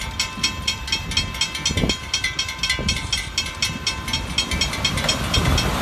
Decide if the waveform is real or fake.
real